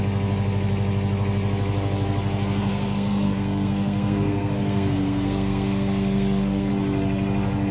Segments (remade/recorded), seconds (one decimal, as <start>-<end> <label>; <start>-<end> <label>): 0.0-2.7 recorded; 2.7-6.7 remade; 6.7-7.7 recorded